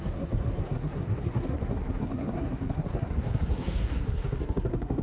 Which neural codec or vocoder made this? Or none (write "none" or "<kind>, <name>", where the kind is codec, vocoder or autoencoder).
codec, SNAC